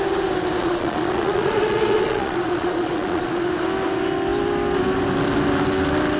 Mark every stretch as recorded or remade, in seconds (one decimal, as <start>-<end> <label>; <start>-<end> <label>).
0.0-0.6 recorded; 0.6-3.5 remade; 3.5-6.2 recorded